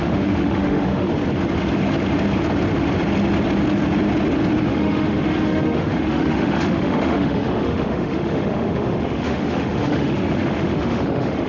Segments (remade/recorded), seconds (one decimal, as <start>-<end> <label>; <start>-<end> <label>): 0.0-1.1 remade; 1.1-4.6 recorded; 4.6-11.5 remade